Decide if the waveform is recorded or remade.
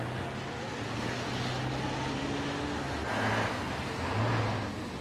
recorded